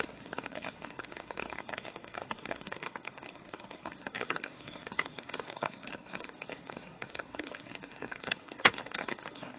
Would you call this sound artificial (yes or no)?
yes